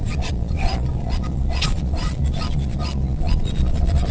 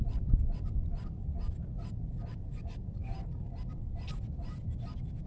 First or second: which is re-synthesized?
first